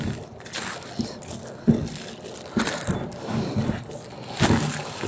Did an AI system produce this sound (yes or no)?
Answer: no